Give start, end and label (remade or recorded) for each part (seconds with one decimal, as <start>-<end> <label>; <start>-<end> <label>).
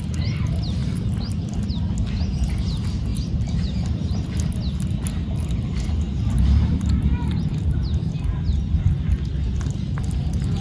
0.0-0.8 recorded; 0.8-1.3 remade; 1.3-3.1 recorded; 3.1-7.4 remade; 7.4-10.6 recorded